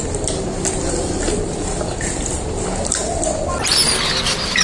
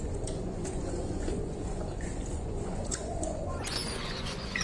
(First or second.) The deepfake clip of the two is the second